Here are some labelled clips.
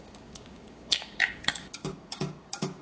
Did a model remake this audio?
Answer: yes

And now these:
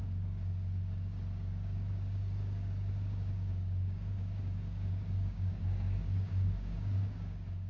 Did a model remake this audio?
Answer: yes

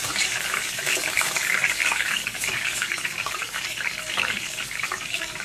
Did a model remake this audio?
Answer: yes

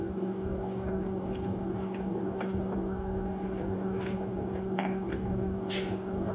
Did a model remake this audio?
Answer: yes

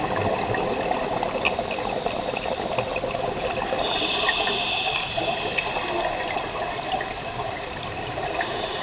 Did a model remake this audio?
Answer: no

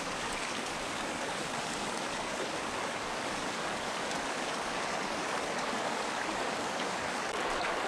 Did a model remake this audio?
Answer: yes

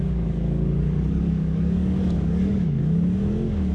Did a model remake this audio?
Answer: yes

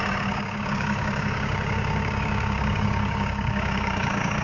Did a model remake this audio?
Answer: yes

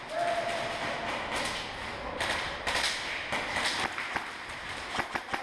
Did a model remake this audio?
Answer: no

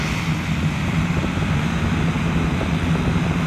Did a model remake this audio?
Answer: no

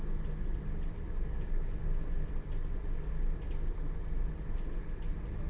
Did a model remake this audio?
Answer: no